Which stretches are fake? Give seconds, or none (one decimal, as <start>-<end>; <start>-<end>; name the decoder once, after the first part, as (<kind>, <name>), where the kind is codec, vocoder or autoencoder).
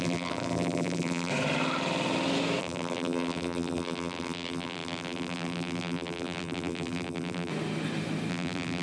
0.0-1.3 (vocoder, BigVGAN v2); 2.6-7.5; 8.3-8.8